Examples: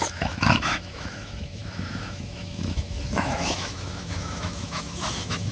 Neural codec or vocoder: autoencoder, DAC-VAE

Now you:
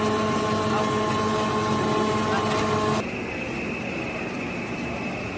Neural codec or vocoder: none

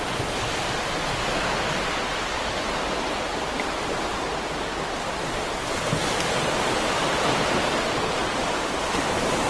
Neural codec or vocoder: none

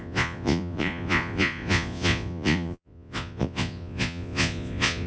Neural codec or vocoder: vocoder, Vocos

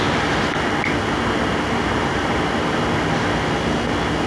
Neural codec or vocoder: none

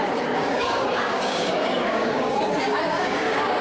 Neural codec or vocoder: codec, DAC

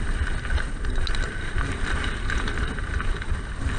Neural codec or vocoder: none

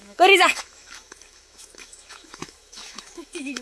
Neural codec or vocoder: autoencoder, DAC-VAE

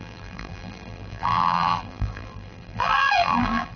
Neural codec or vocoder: vocoder, BigVGAN v2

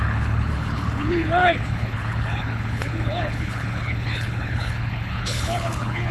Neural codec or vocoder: codec, HILCodec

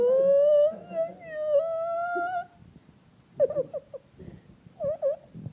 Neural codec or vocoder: none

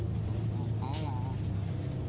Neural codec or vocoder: none